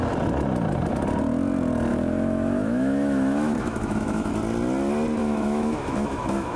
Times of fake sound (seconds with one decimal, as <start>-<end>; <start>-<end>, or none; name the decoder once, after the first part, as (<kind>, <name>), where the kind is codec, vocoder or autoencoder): 1.9-4.3 (autoencoder, DAC-VAE); 5.2-6.6